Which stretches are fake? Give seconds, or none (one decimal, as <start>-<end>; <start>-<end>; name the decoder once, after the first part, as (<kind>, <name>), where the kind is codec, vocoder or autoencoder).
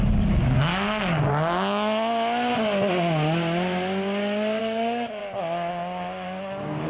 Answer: 0.0-0.7 (codec, DAC); 4.6-5.2; 5.7-6.9